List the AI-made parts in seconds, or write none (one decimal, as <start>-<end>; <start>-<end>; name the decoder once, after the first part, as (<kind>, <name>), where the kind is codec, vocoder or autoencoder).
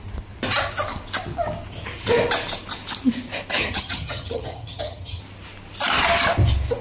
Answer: 3.6-5.2 (vocoder, HiFi-GAN)